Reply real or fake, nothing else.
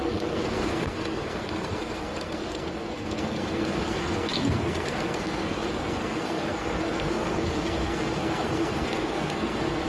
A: fake